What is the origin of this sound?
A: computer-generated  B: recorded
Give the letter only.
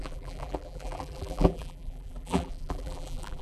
A